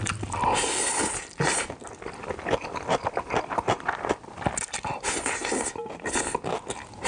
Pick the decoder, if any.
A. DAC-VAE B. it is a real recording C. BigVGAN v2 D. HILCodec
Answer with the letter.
B